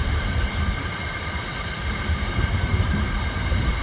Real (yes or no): no